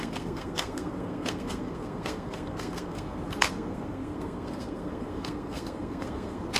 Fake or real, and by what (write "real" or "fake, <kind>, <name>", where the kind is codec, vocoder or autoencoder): fake, codec, SNAC